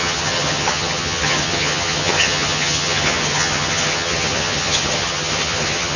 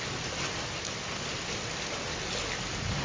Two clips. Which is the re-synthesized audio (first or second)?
first